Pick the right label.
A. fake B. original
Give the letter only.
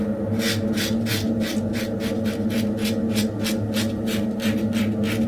B